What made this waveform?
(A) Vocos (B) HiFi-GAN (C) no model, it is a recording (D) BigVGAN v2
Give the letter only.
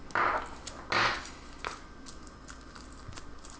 C